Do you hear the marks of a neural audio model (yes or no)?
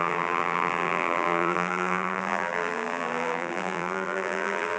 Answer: yes